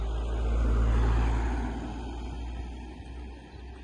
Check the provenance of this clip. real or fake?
real